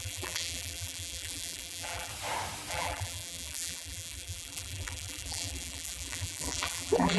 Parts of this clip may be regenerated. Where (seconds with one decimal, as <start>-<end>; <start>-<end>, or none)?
0.0-2.1; 2.7-7.2